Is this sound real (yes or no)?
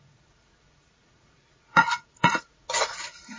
no